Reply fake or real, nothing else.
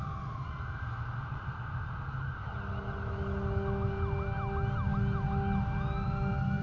real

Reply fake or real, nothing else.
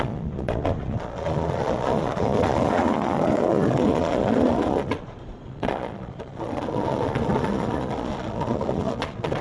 fake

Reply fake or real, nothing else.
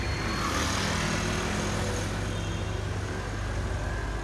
real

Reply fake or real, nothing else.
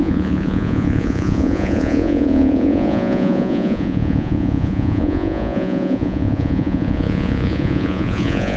fake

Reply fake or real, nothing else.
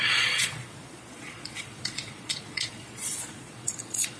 fake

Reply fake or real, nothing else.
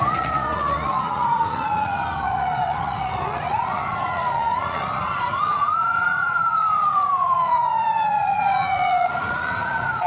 fake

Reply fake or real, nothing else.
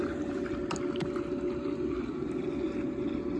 real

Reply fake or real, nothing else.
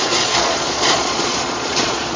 fake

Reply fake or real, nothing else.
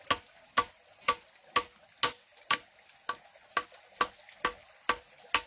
real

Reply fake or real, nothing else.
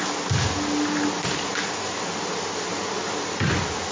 real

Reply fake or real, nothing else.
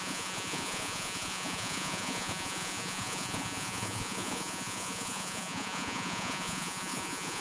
fake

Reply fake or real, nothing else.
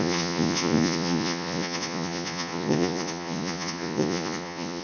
fake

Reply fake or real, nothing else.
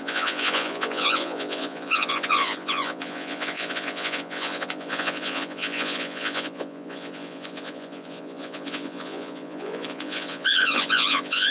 fake